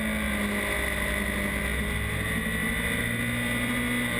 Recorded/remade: recorded